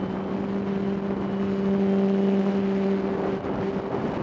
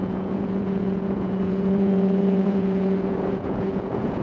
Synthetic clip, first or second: second